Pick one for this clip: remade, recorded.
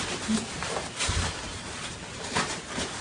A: recorded